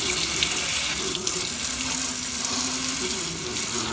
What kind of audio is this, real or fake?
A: real